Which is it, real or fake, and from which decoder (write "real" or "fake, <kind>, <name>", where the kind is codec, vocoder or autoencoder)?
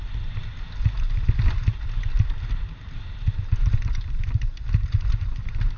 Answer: real